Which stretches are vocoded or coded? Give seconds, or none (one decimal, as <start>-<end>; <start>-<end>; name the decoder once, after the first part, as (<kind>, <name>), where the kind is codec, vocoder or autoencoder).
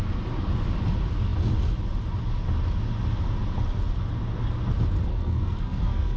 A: 5.1-6.2 (codec, SNAC)